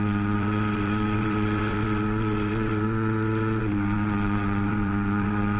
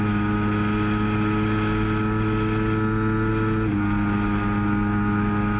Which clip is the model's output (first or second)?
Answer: first